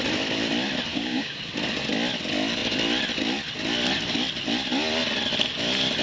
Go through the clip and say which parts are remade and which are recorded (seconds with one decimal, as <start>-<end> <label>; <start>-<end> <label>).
0.0-0.9 recorded; 0.9-1.4 remade; 1.4-6.0 recorded